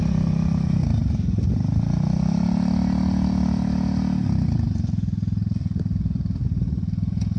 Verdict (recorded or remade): recorded